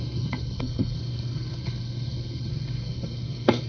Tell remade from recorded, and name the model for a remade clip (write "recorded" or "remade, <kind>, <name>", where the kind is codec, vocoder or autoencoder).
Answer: remade, codec, SNAC